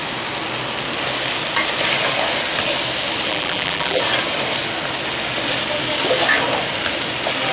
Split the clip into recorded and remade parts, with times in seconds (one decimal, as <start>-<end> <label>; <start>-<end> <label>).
0.0-3.3 recorded; 3.3-4.0 remade; 4.0-7.5 recorded